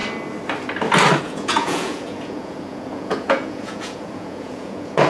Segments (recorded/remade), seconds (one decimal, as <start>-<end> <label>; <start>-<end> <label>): 0.0-1.2 recorded; 1.2-5.1 remade